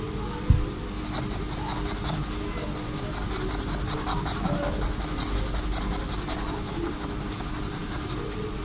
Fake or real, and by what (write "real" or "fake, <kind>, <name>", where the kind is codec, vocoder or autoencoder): real